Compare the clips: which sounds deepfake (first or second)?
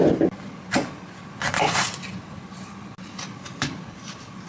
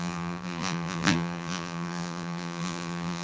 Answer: second